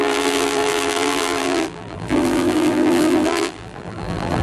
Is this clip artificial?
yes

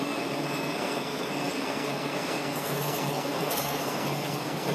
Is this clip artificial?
yes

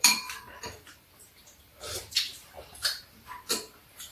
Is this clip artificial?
yes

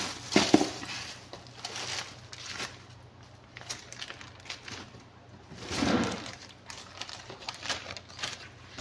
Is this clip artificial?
no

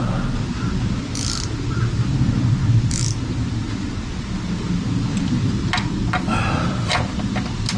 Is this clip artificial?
no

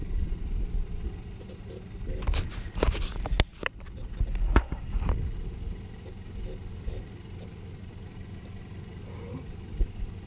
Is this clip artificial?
no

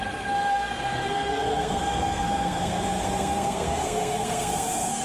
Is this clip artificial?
yes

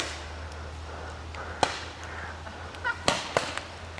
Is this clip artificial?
no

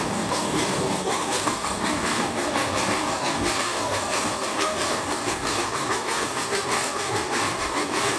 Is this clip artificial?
yes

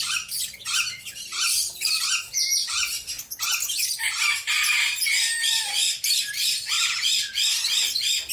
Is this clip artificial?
yes